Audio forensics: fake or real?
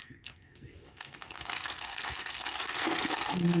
fake